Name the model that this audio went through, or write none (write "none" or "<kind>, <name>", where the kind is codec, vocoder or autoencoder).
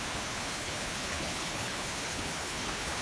codec, HILCodec